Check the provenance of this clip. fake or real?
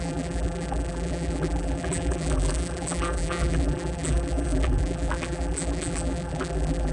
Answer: fake